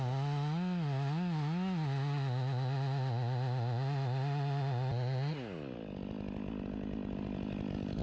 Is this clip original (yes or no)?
yes